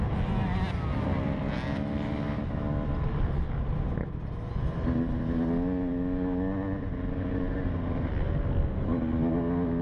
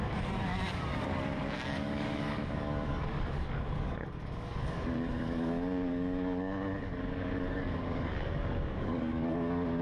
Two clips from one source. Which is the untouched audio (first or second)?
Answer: first